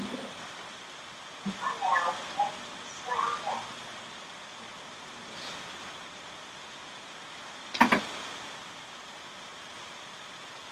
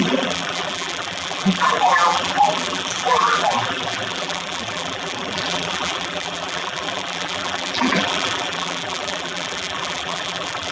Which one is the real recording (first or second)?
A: first